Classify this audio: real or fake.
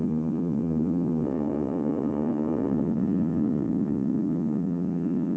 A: fake